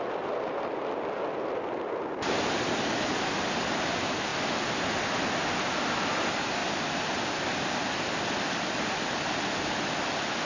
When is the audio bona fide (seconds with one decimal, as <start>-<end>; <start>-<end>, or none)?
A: 0.0-10.5